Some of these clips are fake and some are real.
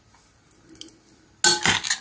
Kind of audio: real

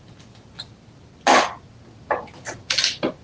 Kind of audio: real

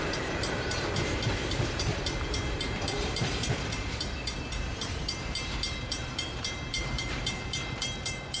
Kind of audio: fake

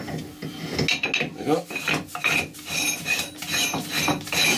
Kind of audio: real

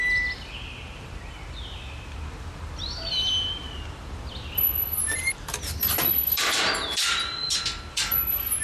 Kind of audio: fake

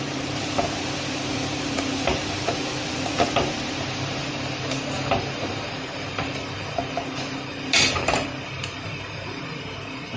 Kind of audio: fake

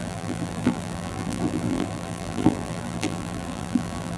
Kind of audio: fake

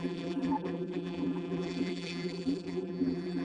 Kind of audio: fake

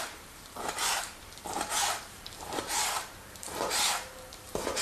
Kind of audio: fake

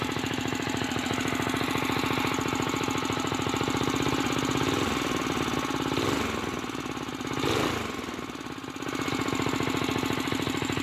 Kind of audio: real